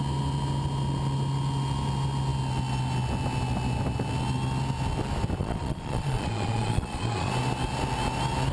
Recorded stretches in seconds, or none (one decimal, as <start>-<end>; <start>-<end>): 0.0-5.4; 7.3-8.5